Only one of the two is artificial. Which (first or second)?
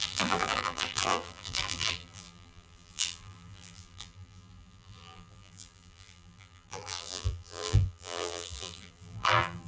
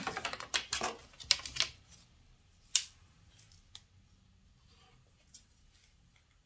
first